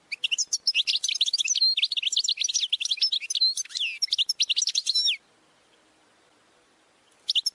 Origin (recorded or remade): recorded